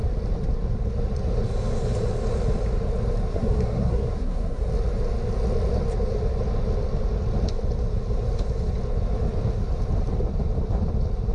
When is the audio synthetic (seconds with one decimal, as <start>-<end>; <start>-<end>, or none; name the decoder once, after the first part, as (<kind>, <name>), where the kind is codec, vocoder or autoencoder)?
3.3-4.7 (codec, SNAC)